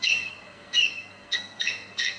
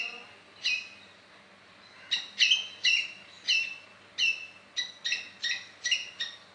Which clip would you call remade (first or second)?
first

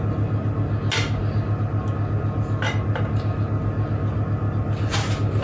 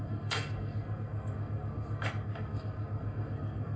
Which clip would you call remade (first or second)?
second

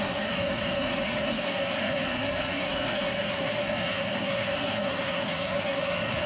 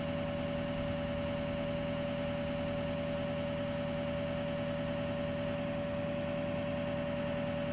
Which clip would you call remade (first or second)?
first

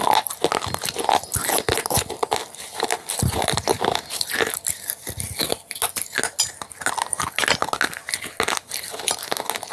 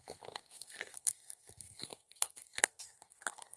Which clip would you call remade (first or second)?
second